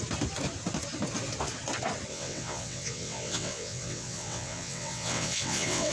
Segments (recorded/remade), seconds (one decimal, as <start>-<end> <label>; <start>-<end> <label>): 0.0-2.1 recorded; 2.1-5.9 remade